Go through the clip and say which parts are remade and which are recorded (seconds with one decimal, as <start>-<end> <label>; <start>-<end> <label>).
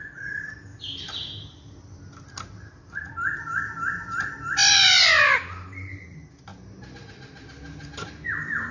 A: 0.0-0.7 remade; 0.7-4.7 recorded; 4.7-6.5 remade; 6.5-8.2 recorded; 8.2-8.7 remade